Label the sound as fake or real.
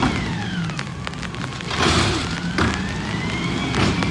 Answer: real